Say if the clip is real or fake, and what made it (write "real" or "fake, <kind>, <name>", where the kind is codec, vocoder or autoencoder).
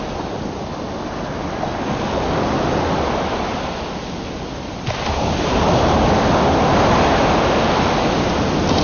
real